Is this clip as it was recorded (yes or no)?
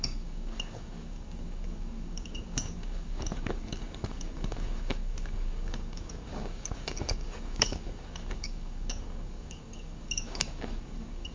no